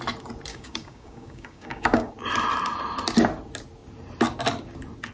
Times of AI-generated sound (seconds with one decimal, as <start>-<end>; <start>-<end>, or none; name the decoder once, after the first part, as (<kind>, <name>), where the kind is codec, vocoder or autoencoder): 0.5-2.1 (codec, DAC)